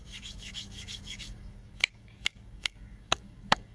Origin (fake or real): fake